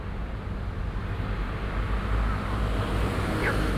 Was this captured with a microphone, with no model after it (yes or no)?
yes